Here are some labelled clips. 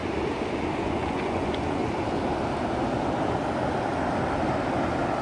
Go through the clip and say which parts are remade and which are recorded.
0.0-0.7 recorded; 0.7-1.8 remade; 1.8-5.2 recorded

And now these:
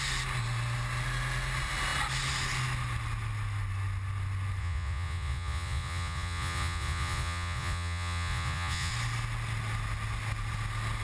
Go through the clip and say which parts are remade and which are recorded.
0.0-4.6 recorded; 4.6-8.9 remade; 8.9-11.0 recorded

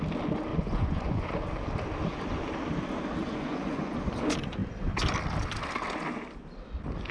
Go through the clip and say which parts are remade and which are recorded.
0.0-0.5 recorded; 0.5-1.5 remade; 1.5-3.2 recorded; 3.2-4.1 remade; 4.1-7.1 recorded